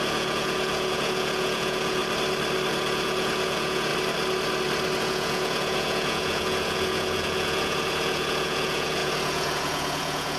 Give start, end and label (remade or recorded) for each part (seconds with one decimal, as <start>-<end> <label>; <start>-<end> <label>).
0.0-2.0 remade; 2.0-2.7 recorded; 2.7-3.9 remade; 3.9-5.0 recorded; 5.0-10.4 remade